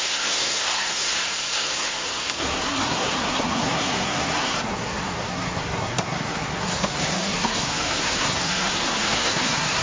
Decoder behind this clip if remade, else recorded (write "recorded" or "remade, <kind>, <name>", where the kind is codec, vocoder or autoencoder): remade, codec, SNAC